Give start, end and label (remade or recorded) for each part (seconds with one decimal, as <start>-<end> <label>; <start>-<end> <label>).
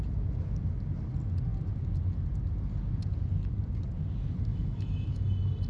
0.0-4.5 recorded; 4.5-5.2 remade; 5.2-5.7 recorded